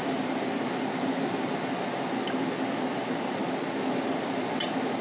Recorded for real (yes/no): yes